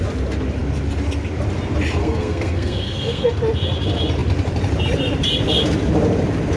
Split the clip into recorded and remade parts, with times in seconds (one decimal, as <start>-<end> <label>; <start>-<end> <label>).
0.0-2.0 recorded; 2.0-3.3 remade; 3.3-6.6 recorded